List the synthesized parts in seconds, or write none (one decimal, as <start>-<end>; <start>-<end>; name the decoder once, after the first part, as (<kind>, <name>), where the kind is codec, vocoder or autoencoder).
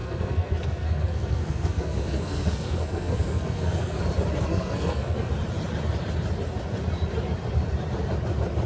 0.0-4.0 (codec, SNAC); 4.4-5.3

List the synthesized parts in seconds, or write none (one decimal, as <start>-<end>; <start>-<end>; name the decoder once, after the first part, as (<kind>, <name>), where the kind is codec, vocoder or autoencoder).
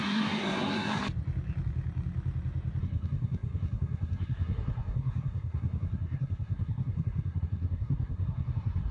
0.0-1.0 (codec, SNAC); 2.8-8.9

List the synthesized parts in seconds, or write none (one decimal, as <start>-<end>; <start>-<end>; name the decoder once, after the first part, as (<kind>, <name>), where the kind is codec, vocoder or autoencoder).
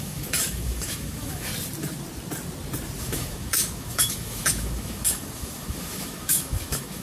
0.0-1.5 (autoencoder, DAC-VAE); 3.0-7.0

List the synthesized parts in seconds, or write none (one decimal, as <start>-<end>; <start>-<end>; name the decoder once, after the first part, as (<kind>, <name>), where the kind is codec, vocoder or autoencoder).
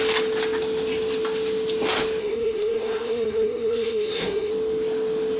2.2-4.5 (codec, SNAC)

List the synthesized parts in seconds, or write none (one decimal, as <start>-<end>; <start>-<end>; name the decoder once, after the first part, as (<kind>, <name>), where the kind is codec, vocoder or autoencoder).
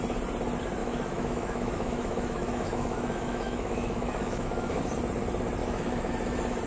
0.8-4.8 (autoencoder, DAC-VAE); 5.6-6.1